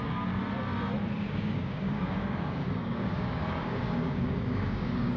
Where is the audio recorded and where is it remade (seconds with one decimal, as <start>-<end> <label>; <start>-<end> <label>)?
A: 0.0-0.4 remade; 0.4-1.3 recorded; 1.3-5.2 remade